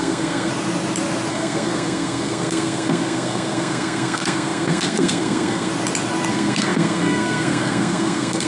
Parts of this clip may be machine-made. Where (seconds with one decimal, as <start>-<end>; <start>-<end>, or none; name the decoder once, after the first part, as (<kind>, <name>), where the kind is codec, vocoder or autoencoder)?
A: 0.0-0.5 (codec, SNAC); 1.3-5.7; 6.3-8.5